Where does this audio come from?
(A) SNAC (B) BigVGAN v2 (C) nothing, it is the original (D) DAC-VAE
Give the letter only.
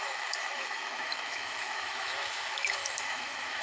D